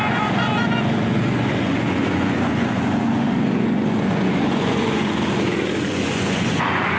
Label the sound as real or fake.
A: fake